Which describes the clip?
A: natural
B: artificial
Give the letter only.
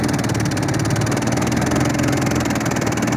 A